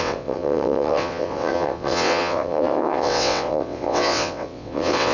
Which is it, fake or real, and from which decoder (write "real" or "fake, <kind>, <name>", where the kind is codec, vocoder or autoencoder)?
fake, vocoder, WaveNeXt